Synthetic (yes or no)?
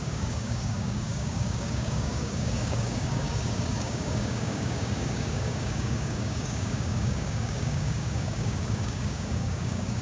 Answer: yes